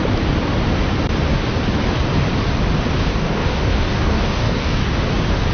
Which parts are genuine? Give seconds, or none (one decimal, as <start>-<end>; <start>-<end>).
0.0-3.1; 4.9-5.5